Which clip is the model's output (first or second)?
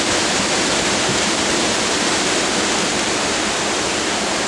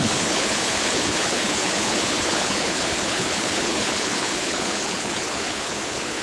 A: second